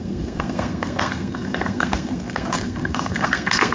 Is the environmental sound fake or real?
fake